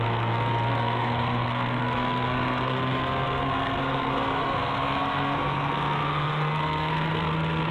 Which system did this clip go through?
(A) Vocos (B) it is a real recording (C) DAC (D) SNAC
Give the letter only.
D